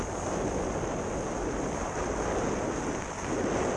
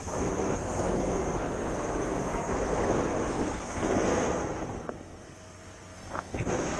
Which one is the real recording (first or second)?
first